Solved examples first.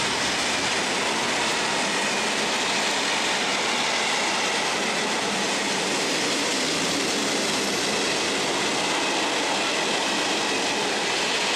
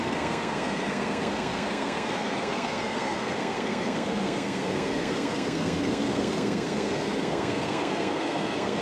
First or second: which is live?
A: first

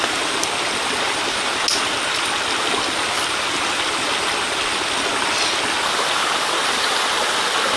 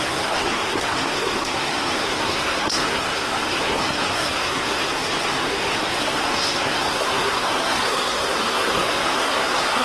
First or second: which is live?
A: first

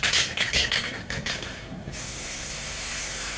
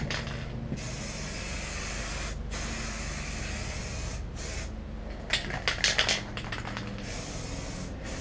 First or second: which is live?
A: second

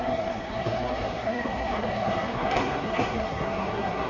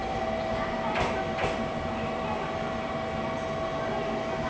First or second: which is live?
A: second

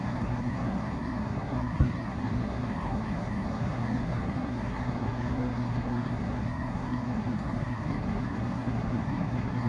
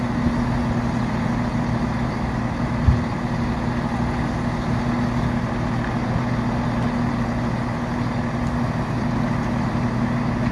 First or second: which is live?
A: second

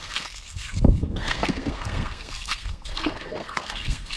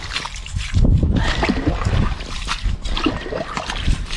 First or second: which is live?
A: second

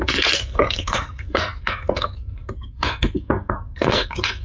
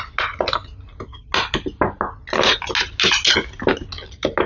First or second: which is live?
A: second